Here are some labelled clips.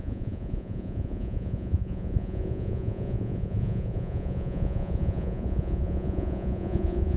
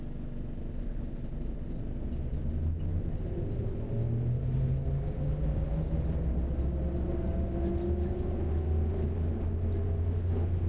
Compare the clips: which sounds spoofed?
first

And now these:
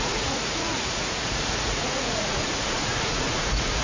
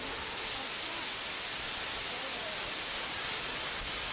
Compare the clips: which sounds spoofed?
first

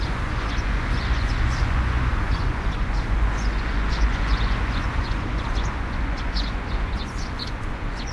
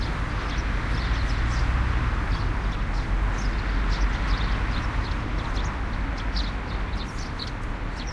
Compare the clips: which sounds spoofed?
first